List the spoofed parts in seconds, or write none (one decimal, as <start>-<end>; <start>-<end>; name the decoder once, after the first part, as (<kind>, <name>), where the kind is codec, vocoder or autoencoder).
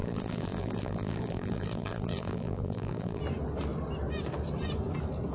0.0-3.2 (vocoder, BigVGAN v2)